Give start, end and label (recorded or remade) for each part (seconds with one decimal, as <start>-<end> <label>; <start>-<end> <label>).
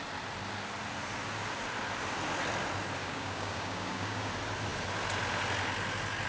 0.0-3.0 recorded; 3.0-4.3 remade; 4.3-6.3 recorded